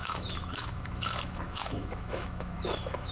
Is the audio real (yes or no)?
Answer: no